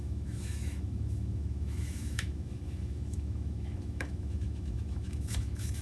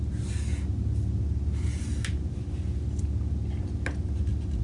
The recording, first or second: second